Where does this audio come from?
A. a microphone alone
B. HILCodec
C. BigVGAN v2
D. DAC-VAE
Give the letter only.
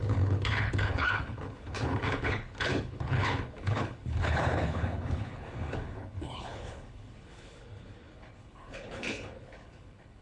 B